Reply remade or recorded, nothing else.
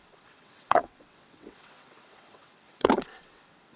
remade